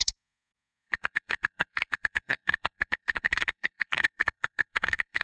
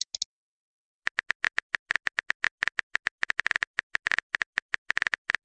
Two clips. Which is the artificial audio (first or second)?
first